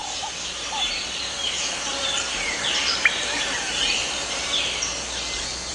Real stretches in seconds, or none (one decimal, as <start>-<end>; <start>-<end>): 4.9-5.7